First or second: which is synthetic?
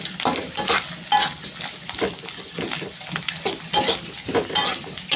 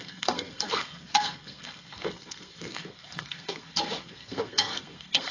second